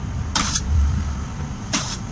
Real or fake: fake